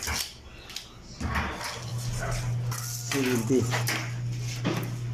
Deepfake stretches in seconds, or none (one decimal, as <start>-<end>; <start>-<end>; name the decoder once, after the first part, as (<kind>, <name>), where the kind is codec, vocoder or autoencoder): none